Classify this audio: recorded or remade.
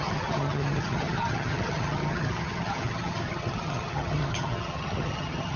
remade